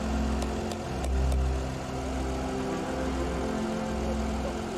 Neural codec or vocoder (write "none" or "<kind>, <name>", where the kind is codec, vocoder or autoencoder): none